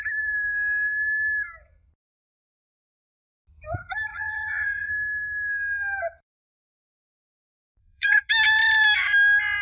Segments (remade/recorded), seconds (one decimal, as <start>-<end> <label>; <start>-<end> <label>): 0.0-4.1 recorded; 4.1-4.9 remade; 4.9-7.8 recorded; 7.8-8.3 remade; 8.3-9.6 recorded